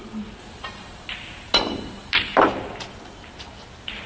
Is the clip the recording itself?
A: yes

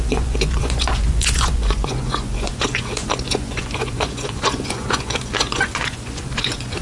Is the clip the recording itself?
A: no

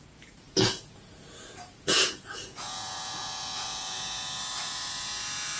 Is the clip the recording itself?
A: no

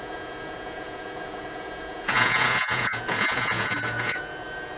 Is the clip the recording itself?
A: no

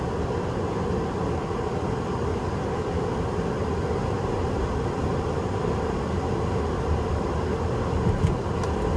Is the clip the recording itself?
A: yes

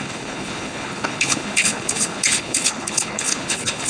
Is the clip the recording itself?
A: no